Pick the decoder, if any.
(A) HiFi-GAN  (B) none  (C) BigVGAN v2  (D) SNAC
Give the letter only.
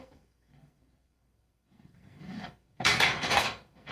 D